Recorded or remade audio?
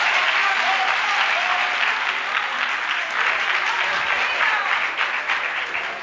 recorded